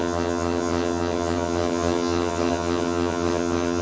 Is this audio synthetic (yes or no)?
yes